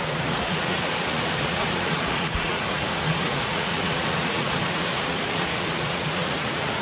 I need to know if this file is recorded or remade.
remade